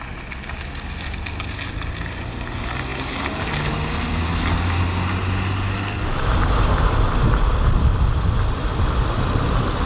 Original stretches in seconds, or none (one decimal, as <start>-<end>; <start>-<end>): 0.0-9.9